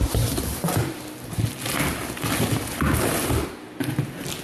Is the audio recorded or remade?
recorded